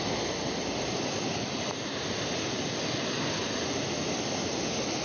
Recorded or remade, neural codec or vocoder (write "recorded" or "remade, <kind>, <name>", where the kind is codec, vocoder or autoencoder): recorded